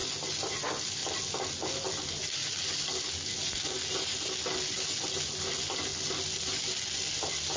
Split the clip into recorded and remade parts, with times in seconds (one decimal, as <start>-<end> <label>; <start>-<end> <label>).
0.0-7.6 recorded